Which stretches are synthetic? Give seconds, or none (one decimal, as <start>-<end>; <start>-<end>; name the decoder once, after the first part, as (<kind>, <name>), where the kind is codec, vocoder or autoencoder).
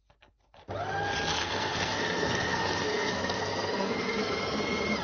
1.3-4.3 (codec, SNAC)